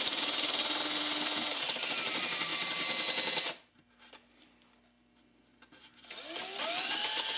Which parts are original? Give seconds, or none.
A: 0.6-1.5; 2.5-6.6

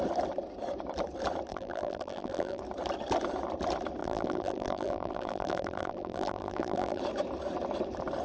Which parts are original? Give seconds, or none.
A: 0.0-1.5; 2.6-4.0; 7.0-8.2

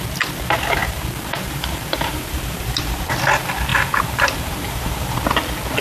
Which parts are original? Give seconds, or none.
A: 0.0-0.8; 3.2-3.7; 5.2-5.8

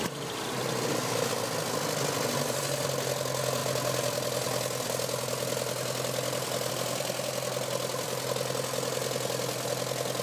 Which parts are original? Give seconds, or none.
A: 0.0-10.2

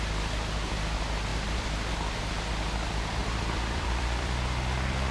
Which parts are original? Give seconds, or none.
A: 0.0-1.3; 1.9-3.2